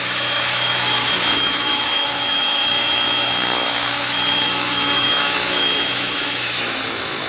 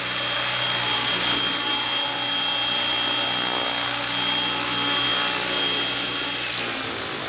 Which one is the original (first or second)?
second